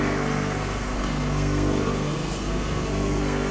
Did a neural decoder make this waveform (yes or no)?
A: yes